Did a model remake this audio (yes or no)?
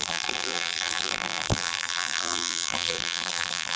yes